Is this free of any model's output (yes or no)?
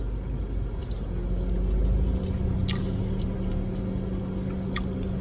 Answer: yes